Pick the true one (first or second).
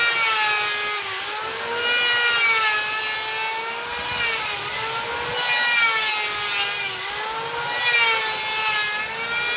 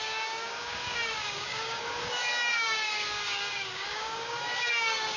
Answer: first